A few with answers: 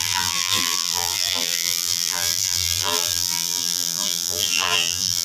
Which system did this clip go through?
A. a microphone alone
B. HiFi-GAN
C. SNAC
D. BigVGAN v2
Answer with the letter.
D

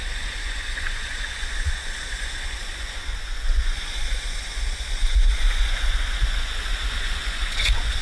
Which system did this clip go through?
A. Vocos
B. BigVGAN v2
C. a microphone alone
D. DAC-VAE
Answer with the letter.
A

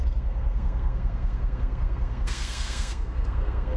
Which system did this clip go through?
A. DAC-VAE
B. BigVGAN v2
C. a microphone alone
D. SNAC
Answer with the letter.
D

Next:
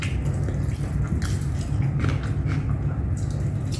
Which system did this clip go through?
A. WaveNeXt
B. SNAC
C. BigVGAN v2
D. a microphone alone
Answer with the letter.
D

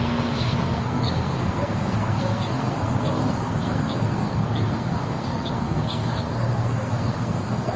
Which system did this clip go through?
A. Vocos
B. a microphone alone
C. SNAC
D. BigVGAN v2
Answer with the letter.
C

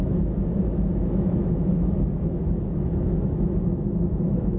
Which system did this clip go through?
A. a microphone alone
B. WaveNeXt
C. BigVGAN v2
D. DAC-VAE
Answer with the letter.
D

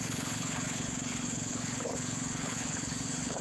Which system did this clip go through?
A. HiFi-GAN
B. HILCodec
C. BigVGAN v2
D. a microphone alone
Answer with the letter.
B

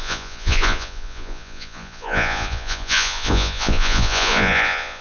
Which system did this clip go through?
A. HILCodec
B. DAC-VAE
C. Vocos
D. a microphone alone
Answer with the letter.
C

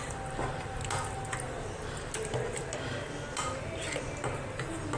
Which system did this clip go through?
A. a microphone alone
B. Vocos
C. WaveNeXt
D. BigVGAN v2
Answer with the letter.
A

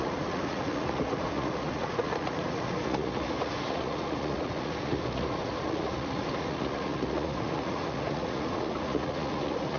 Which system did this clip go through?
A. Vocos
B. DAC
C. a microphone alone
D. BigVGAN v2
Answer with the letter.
A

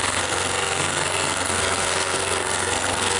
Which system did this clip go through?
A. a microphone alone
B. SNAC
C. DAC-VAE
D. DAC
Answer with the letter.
B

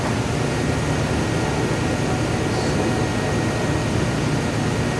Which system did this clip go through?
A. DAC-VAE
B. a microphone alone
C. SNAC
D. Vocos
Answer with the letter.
B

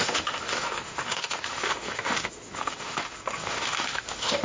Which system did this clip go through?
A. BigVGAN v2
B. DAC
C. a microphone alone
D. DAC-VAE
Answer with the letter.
D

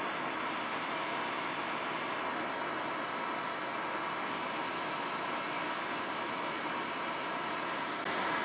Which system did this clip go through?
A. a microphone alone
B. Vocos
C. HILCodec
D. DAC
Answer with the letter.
A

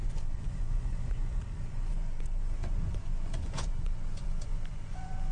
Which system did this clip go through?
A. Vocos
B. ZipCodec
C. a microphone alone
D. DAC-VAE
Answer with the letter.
A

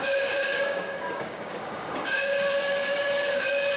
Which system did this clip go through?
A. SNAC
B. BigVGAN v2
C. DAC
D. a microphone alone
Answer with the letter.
C